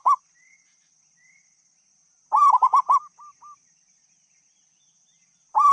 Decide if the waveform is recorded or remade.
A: recorded